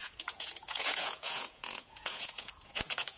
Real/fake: fake